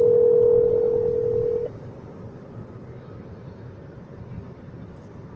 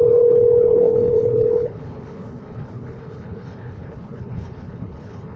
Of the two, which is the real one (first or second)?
first